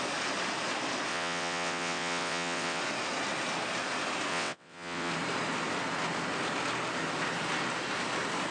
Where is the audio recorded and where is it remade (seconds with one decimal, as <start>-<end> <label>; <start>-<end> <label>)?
0.0-1.1 recorded; 1.1-2.8 remade; 2.8-4.3 recorded; 4.3-5.1 remade; 5.1-8.5 recorded